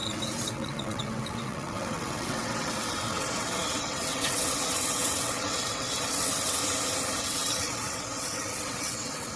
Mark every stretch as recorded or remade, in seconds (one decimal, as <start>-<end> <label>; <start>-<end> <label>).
0.0-6.6 remade; 6.6-7.2 recorded; 7.2-9.4 remade